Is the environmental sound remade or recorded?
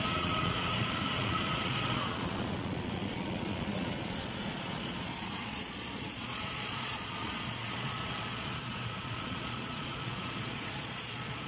remade